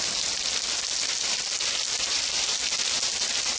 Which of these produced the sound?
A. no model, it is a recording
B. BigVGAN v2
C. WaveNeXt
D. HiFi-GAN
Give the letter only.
A